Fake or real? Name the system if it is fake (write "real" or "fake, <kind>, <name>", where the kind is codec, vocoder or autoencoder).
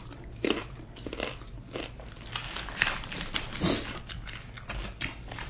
real